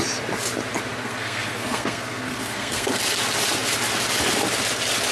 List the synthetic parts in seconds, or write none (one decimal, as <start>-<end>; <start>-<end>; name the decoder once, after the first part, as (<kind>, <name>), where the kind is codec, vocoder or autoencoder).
1.0-2.9 (codec, SNAC)